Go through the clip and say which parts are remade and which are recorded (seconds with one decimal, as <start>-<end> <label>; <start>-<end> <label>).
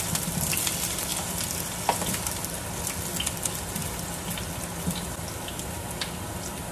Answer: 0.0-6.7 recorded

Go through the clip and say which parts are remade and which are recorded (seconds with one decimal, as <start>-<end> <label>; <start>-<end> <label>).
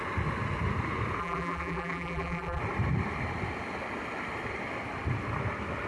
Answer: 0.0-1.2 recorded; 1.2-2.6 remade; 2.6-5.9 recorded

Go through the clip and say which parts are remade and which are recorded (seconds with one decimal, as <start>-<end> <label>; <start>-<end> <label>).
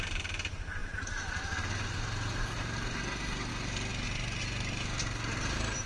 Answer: 0.0-5.9 recorded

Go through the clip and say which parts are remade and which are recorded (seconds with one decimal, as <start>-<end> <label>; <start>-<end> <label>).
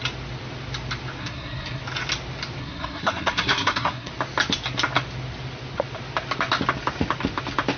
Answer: 0.0-1.2 recorded; 1.2-1.8 remade; 1.8-2.6 recorded; 2.6-4.1 remade; 4.1-7.8 recorded